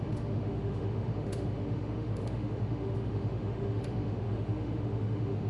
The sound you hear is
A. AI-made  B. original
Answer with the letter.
A